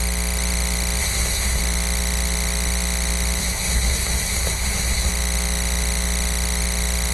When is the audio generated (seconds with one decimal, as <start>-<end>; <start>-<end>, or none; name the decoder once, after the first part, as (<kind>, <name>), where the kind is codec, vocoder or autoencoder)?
1.0-1.6 (codec, SNAC); 3.4-5.1